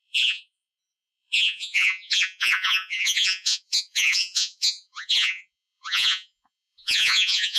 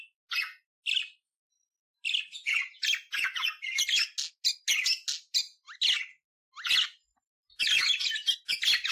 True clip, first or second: second